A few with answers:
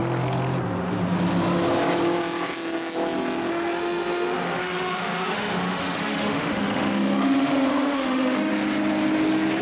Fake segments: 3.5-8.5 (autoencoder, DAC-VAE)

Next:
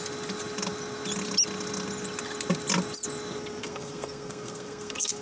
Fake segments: 3.6-5.2 (codec, SNAC)

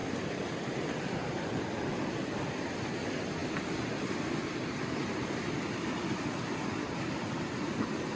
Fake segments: none